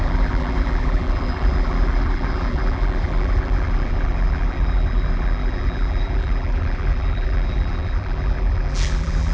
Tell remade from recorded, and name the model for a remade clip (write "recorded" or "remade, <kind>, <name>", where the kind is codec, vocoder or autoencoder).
remade, vocoder, BigVGAN v2